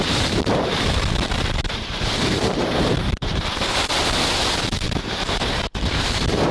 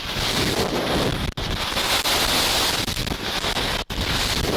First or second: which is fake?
first